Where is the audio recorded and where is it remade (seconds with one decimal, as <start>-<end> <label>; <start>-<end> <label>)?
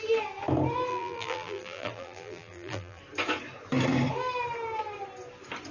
0.0-0.9 recorded; 0.9-3.0 remade; 3.0-5.7 recorded